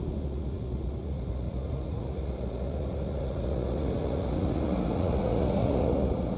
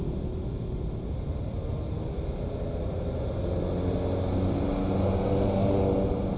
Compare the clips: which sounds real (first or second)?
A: second